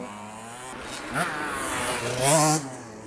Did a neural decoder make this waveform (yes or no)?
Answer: no